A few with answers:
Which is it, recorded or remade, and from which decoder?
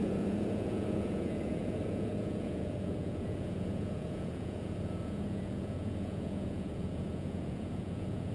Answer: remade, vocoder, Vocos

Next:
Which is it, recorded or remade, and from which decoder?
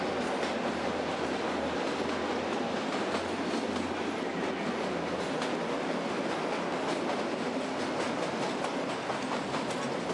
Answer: recorded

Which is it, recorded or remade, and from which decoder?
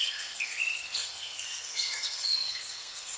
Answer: remade, codec, SNAC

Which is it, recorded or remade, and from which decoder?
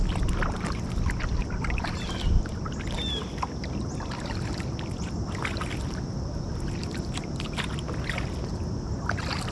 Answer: recorded